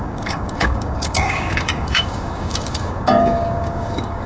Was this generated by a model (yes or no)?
yes